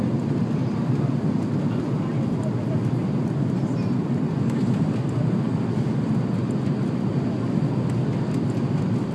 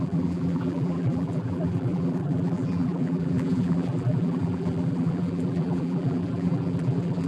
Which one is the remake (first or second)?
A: second